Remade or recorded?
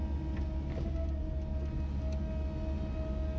recorded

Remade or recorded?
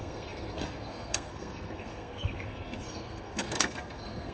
remade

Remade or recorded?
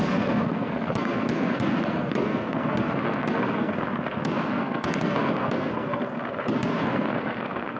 remade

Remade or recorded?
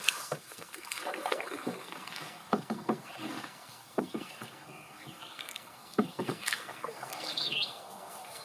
remade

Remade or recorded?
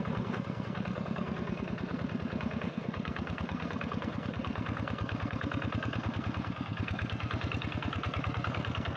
remade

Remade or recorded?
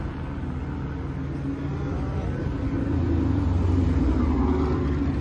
recorded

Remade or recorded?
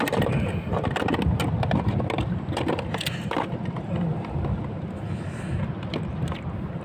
recorded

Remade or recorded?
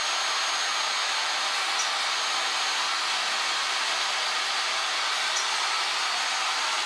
recorded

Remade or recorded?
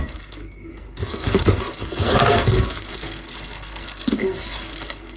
remade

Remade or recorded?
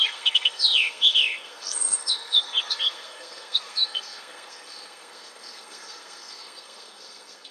remade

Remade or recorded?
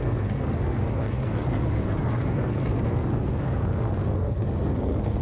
remade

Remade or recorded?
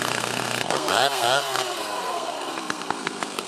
remade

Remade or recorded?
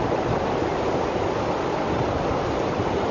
recorded